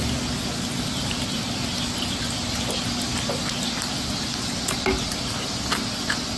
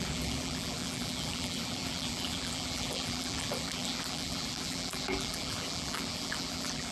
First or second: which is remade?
second